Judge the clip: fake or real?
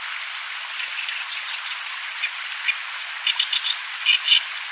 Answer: real